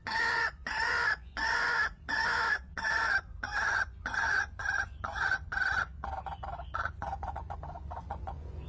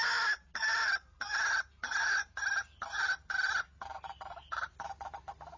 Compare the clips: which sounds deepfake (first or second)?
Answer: first